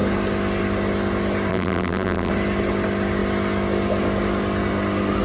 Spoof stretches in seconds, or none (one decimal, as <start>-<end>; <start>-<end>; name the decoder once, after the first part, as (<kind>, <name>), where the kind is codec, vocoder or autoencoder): 1.5-2.3 (vocoder, BigVGAN v2)